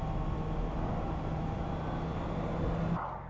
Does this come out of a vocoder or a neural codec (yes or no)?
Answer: no